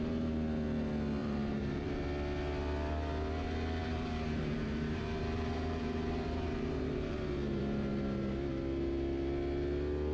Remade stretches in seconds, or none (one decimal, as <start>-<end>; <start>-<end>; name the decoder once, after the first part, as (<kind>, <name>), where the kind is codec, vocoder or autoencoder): 1.2-2.0 (vocoder, BigVGAN v2); 3.8-7.6